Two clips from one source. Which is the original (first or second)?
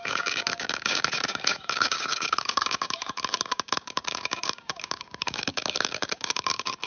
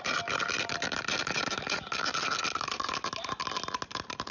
second